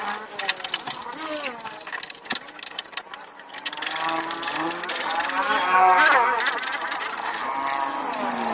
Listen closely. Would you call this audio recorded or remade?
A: recorded